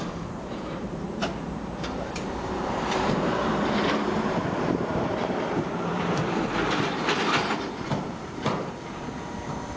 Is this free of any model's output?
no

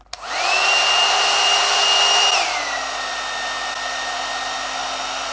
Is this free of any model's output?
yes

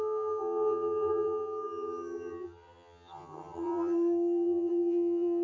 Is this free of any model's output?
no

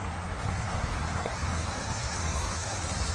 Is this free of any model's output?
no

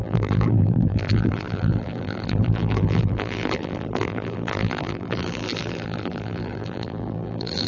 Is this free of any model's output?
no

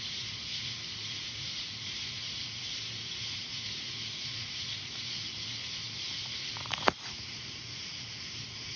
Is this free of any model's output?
no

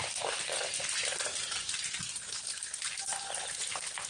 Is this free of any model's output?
yes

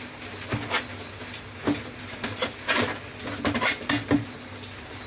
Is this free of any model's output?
yes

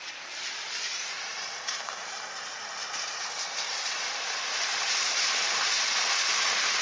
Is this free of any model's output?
no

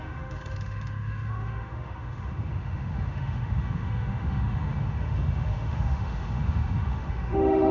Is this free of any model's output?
no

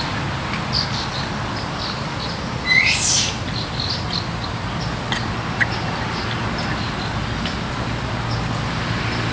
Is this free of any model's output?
yes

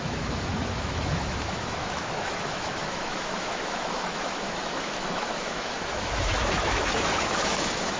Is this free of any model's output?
no